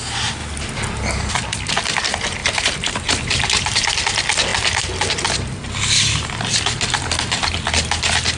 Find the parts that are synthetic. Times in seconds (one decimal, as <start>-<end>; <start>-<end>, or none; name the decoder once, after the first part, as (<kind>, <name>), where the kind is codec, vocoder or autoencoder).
2.4-4.0 (vocoder, BigVGAN v2)

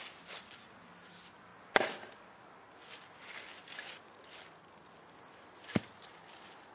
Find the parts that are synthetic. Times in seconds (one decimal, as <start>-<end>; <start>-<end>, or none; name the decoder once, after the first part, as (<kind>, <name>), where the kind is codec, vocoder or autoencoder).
none